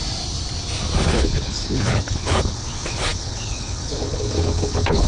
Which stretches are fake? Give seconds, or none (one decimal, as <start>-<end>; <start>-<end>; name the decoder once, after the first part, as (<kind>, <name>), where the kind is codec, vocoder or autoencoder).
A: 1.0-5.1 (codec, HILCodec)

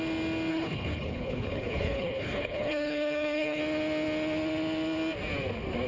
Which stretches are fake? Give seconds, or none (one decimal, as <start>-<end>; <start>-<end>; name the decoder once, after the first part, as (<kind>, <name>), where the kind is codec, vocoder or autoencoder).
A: 0.5-3.6 (codec, HILCodec)

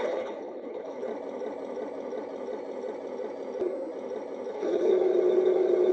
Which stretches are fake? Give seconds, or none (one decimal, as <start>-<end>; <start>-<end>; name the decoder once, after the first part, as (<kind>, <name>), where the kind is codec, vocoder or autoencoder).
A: 0.0-1.1 (codec, HILCodec); 4.5-4.9